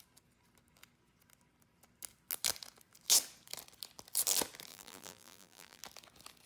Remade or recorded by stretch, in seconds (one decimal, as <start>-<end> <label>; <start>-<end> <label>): 0.0-4.7 recorded; 4.7-5.8 remade; 5.8-6.5 recorded